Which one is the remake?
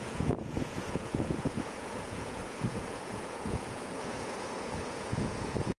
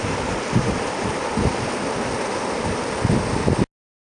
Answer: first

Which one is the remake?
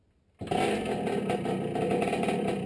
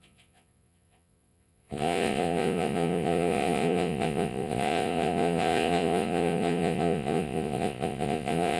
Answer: second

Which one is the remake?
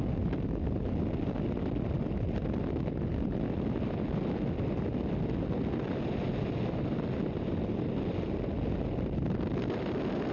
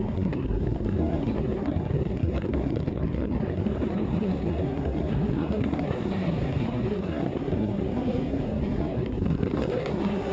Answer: second